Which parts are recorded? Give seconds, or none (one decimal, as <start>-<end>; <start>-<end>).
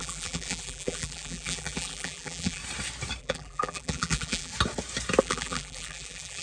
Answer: 2.6-3.2; 4.5-5.2